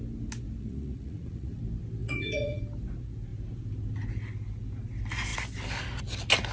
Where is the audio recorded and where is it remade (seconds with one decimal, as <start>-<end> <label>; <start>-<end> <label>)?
0.0-0.6 recorded; 0.6-1.6 remade; 1.6-2.0 recorded; 2.0-2.6 remade; 2.6-6.5 recorded